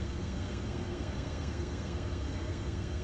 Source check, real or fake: fake